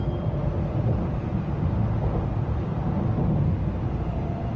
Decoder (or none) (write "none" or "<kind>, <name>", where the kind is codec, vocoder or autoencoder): none